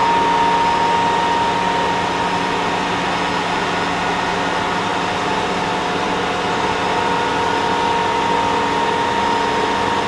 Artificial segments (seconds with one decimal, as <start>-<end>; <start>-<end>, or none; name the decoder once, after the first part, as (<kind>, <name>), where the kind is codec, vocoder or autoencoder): none

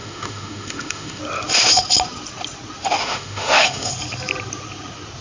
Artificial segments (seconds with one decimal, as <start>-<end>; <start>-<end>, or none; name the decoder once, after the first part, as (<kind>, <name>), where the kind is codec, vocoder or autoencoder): 0.0-1.2 (autoencoder, DAC-VAE); 3.0-3.9

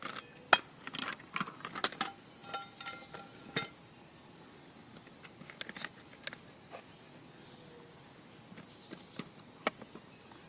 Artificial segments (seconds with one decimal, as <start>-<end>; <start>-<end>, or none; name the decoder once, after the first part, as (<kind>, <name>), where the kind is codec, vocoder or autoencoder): none

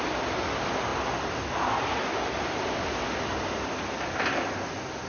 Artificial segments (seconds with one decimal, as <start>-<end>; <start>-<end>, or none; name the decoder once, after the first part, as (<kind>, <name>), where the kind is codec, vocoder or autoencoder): none

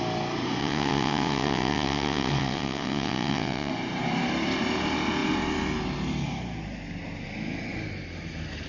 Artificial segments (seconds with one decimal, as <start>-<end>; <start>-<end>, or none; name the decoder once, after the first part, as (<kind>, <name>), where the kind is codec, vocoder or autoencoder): 0.6-3.7 (vocoder, WaveNeXt)

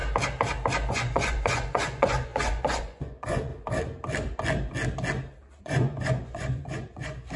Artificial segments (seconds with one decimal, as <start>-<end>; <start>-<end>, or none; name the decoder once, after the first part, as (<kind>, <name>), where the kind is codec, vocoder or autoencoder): 0.9-3.5 (vocoder, Vocos); 5.6-7.4